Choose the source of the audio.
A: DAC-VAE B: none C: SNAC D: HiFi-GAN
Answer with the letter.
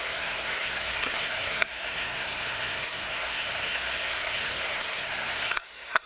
C